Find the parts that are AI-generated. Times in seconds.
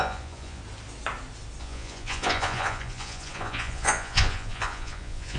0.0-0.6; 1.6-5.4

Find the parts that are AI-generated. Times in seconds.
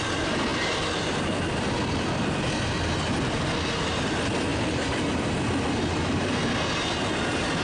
none